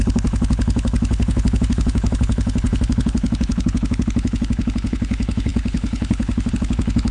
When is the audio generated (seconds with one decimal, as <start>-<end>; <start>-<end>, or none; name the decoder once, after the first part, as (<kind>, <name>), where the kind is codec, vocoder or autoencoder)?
0.0-7.1 (codec, HILCodec)